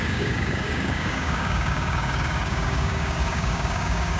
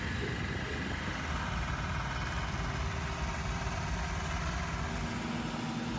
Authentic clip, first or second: second